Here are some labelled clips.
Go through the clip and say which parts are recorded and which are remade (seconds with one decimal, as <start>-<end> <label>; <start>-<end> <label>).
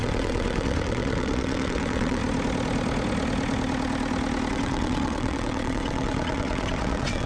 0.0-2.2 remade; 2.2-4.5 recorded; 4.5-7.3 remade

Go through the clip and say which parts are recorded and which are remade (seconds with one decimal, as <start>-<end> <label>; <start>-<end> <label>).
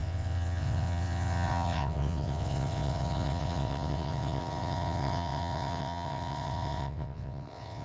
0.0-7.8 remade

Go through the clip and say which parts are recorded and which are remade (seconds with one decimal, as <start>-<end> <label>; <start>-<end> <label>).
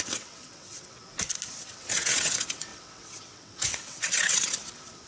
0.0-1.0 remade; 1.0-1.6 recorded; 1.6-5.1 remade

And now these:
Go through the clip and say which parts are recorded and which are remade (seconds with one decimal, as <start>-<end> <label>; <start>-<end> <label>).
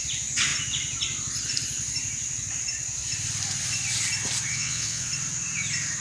0.0-4.5 recorded; 4.5-5.1 remade; 5.1-6.0 recorded